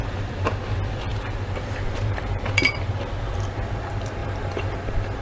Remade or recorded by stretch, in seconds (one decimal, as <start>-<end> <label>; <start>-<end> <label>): 0.0-1.1 recorded; 1.1-2.9 remade; 2.9-4.2 recorded; 4.2-4.7 remade; 4.7-5.2 recorded